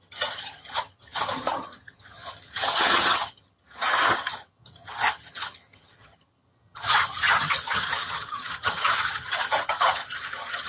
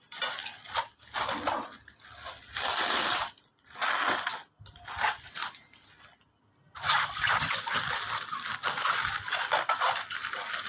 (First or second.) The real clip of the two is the second